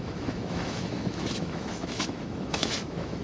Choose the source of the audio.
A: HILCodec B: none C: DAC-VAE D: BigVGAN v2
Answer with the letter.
C